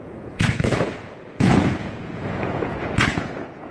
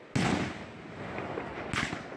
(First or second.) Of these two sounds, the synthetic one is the first